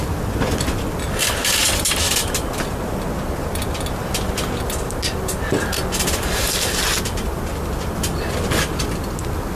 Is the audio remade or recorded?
recorded